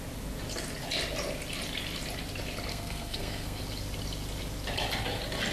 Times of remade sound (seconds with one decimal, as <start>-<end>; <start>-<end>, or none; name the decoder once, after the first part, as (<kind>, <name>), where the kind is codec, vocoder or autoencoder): 2.7-3.6 (codec, SNAC)

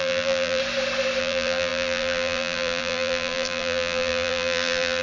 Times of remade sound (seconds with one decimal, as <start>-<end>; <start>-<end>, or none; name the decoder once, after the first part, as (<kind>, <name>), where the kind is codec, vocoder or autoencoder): 0.0-0.6 (vocoder, BigVGAN v2); 1.2-5.0